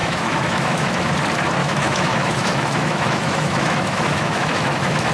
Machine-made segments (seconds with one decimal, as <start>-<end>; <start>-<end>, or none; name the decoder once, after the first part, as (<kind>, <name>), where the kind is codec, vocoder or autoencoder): 0.0-1.1 (autoencoder, DAC-VAE); 1.6-5.1